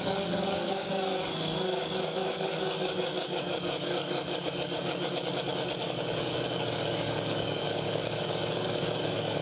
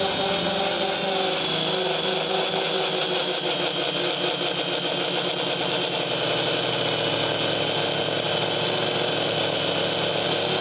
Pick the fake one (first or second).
first